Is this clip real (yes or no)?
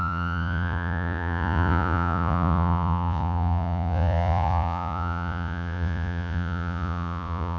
no